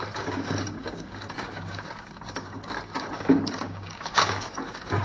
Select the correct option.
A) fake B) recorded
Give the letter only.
A